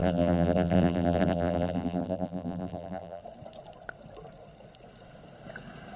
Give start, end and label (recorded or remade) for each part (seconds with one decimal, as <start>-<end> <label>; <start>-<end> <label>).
0.0-3.2 remade; 3.2-6.0 recorded